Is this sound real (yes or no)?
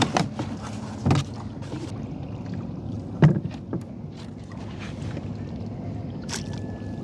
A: yes